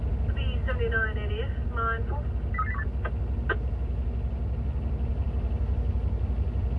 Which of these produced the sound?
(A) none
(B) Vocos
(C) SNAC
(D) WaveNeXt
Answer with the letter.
A